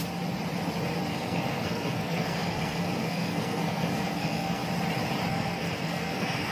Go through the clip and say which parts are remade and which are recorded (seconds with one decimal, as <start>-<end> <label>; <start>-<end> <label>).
0.0-1.1 recorded; 1.1-4.6 remade; 4.6-5.3 recorded; 5.3-6.5 remade